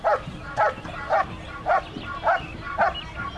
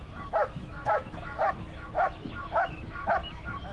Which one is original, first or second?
first